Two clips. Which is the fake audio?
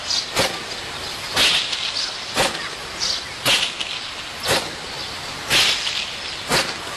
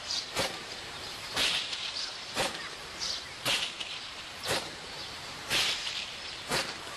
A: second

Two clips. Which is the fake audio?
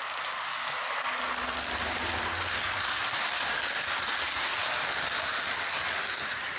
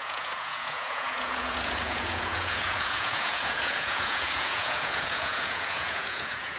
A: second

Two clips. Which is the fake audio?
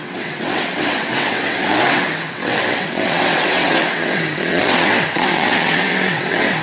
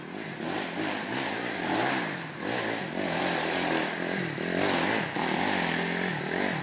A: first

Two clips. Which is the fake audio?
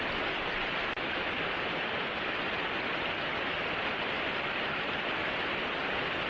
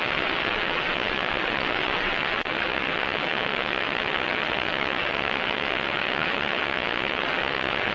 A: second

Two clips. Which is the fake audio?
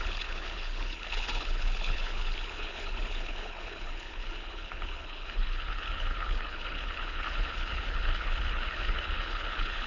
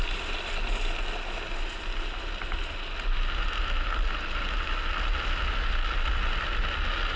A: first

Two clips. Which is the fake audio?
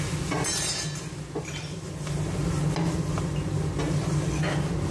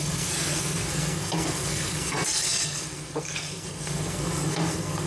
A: second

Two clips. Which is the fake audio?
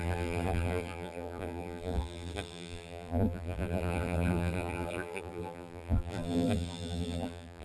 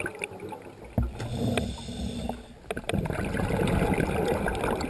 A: first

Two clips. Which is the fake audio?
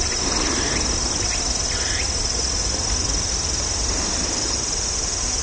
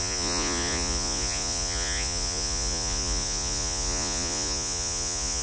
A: second